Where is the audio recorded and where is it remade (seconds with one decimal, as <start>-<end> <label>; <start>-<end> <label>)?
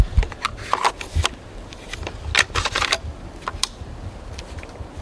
0.0-5.0 recorded